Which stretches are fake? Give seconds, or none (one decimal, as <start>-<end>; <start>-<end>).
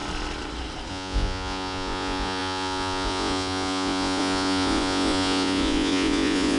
0.9-6.6